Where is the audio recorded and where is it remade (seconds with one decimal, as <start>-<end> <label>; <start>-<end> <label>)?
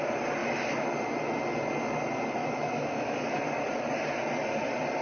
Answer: 0.0-0.4 recorded; 0.4-0.9 remade; 0.9-2.4 recorded; 2.4-3.4 remade; 3.4-5.0 recorded